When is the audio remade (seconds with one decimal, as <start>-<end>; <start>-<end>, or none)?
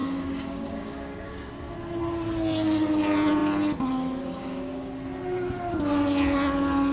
0.0-1.5; 4.4-4.9